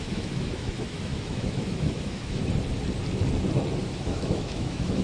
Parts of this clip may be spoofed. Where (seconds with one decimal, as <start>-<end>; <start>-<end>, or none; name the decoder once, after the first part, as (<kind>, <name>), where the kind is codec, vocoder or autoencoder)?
0.0-2.4 (autoencoder, DAC-VAE); 3.8-5.0